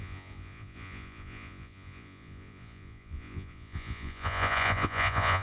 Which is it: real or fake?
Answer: fake